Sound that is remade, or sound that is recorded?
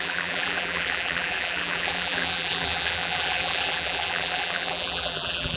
remade